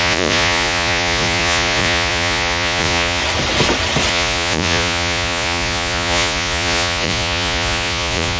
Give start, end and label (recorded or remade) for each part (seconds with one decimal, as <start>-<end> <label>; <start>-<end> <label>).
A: 0.0-3.2 remade; 3.2-4.1 recorded; 4.1-8.4 remade